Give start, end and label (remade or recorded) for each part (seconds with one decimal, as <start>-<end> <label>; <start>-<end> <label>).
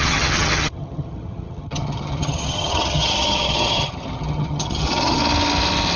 0.0-5.2 remade; 5.2-6.0 recorded